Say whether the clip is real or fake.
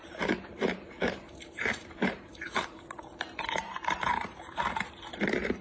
fake